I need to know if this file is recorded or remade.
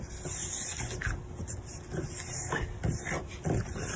recorded